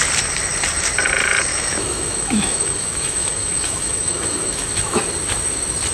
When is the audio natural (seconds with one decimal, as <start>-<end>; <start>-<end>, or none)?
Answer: 0.0-1.5; 5.0-5.9